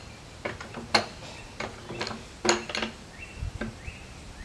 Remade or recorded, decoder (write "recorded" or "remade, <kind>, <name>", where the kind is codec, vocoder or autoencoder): recorded